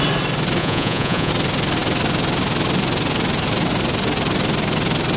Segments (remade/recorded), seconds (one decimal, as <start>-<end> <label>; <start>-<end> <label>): 0.0-0.6 recorded; 0.6-1.3 remade; 1.3-5.2 recorded

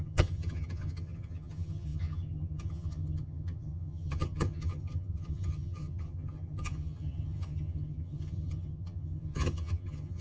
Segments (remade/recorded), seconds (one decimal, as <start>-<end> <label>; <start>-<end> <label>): 0.0-10.2 remade

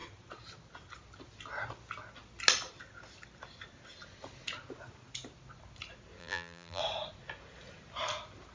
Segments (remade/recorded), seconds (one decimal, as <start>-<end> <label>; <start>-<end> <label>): 0.0-6.2 recorded; 6.2-6.8 remade; 6.8-8.5 recorded